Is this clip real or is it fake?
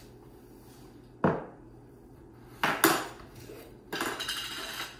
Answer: real